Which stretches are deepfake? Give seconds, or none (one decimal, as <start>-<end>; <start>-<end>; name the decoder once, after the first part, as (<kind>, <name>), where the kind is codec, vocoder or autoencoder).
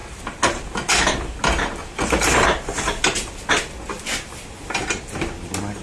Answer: none